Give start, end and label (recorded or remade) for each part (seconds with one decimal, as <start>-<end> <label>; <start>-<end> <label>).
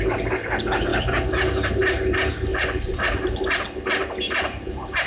0.0-2.5 recorded; 2.5-3.4 remade; 3.4-5.1 recorded